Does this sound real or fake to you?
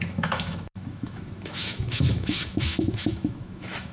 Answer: fake